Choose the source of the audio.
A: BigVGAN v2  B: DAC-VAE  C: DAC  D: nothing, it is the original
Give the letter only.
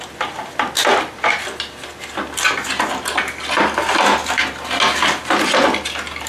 D